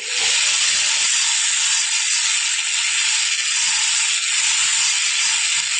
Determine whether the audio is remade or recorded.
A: recorded